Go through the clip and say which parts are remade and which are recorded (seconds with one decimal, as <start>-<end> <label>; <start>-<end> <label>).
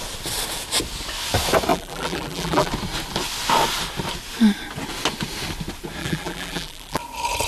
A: 0.0-1.7 recorded; 1.7-2.7 remade; 2.7-6.0 recorded; 6.0-7.0 remade; 7.0-7.5 recorded